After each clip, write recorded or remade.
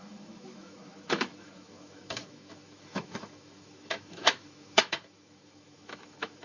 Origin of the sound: remade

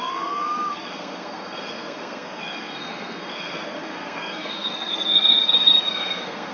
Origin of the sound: remade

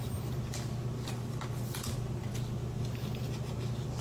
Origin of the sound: recorded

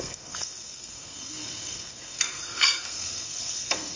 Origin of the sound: remade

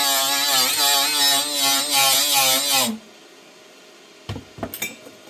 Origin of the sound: recorded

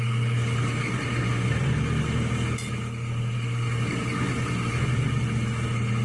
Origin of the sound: recorded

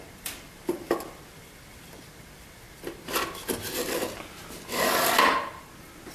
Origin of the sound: recorded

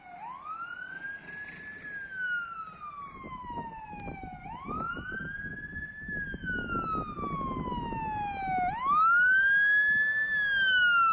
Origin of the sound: recorded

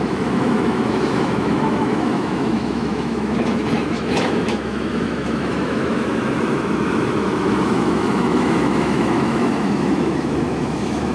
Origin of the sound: remade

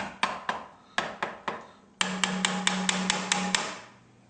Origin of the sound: recorded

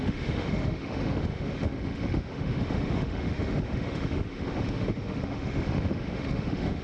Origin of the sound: remade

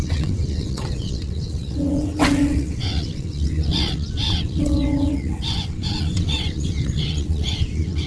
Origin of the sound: remade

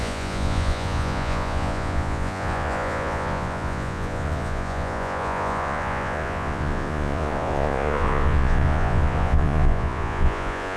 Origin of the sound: remade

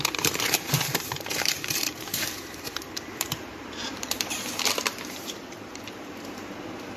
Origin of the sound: remade